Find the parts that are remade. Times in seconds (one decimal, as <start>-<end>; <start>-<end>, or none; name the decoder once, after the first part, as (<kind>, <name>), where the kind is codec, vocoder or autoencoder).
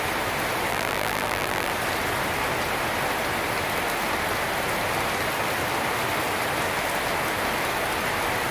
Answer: 0.7-1.7 (vocoder, BigVGAN v2)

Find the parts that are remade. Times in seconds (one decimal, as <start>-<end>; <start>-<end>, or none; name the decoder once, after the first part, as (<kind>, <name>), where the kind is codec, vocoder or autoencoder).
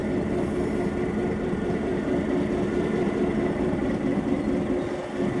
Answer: 1.2-4.4 (vocoder, BigVGAN v2)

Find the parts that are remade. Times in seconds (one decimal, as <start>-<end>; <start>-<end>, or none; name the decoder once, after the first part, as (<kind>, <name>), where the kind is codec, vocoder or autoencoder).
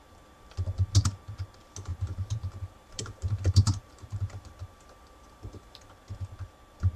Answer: 1.9-5.9 (vocoder, BigVGAN v2)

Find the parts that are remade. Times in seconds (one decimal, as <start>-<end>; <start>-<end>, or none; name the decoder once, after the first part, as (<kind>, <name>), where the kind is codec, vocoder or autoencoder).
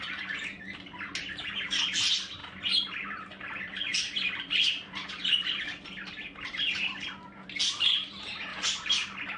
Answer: 3.9-6.6 (vocoder, BigVGAN v2); 8.5-9.4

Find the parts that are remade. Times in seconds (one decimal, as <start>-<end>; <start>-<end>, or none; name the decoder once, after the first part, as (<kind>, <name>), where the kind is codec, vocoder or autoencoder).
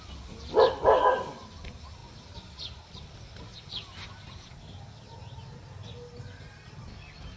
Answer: none